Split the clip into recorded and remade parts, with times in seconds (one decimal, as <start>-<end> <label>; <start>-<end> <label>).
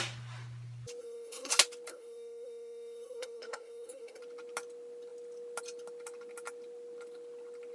0.0-1.0 recorded; 1.0-1.5 remade; 1.5-1.9 recorded; 1.9-4.2 remade; 4.2-7.7 recorded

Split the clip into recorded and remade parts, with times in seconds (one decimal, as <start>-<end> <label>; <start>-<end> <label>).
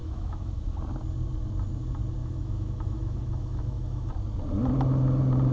0.0-0.8 remade; 0.8-2.2 recorded; 2.2-4.1 remade; 4.1-5.5 recorded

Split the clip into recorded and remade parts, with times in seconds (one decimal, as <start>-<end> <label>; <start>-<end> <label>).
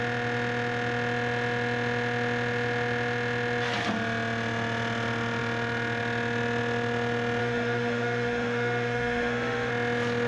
0.0-7.4 recorded; 7.4-9.7 remade; 9.7-10.3 recorded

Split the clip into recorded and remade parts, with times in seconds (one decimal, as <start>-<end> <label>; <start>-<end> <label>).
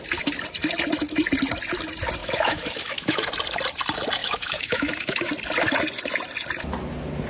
0.0-2.2 recorded; 2.2-3.3 remade; 3.3-4.2 recorded; 4.2-5.3 remade; 5.3-7.3 recorded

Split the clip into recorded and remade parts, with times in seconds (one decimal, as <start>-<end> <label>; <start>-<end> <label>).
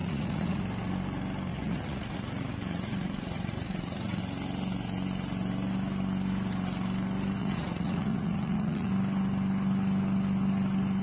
0.0-0.6 remade; 0.6-1.5 recorded; 1.5-4.2 remade; 4.2-7.4 recorded; 7.4-8.9 remade; 8.9-11.0 recorded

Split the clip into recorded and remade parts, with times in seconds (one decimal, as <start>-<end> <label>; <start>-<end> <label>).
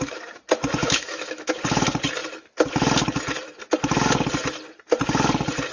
0.0-0.8 recorded; 0.8-1.5 remade; 1.5-5.7 recorded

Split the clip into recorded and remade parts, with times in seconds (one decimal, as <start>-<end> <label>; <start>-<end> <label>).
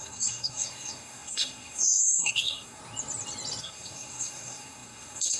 0.0-2.8 remade; 2.8-3.6 recorded; 3.6-5.4 remade